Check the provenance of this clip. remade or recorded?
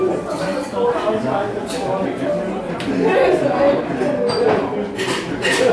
recorded